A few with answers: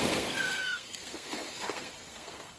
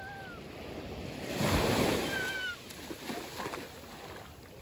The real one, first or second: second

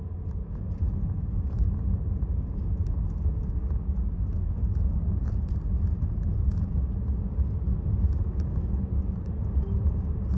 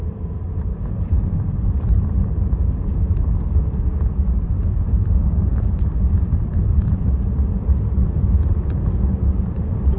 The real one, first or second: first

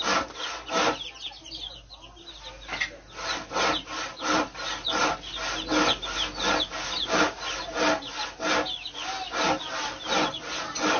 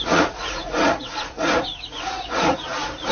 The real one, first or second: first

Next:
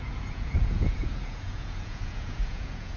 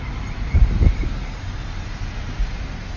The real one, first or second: second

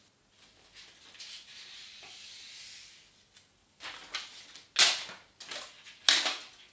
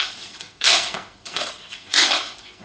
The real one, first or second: first